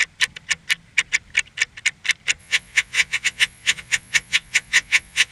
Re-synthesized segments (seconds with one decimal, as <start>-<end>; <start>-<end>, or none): 2.4-5.3